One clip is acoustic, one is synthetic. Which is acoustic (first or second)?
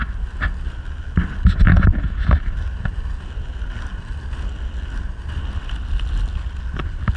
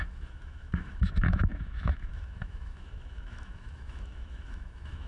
first